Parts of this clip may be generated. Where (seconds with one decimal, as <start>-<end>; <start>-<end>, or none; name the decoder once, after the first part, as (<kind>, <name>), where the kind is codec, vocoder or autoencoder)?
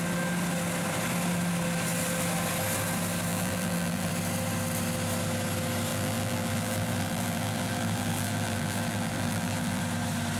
3.3-4.1 (vocoder, BigVGAN v2); 5.9-9.8